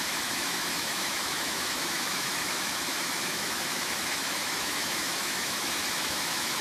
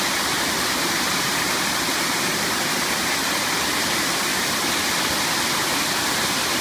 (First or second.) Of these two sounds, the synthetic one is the first